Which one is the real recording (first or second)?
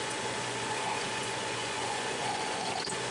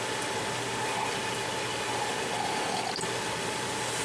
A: second